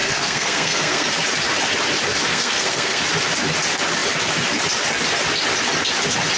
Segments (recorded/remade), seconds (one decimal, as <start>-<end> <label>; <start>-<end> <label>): 0.0-1.1 remade; 1.1-2.3 recorded; 2.3-3.0 remade; 3.0-6.4 recorded